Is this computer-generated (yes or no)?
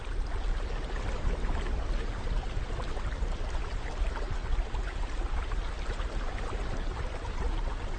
no